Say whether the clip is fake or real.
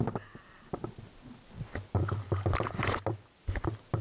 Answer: real